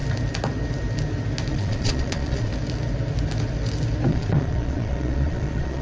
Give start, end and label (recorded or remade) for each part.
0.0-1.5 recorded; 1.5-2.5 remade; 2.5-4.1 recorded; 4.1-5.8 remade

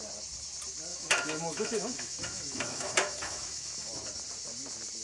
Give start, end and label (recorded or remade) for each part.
0.0-0.9 recorded; 0.9-3.9 remade; 3.9-5.0 recorded

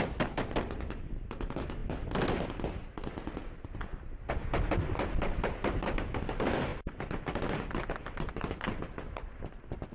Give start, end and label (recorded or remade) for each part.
0.0-6.7 recorded; 6.7-9.4 remade; 9.4-9.9 recorded

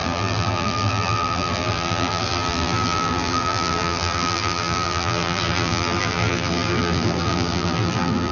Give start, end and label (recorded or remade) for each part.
0.0-8.3 remade